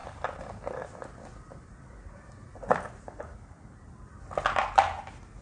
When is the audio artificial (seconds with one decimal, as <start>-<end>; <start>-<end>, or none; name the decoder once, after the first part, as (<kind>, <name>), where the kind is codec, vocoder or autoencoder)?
0.0-3.2 (vocoder, BigVGAN v2)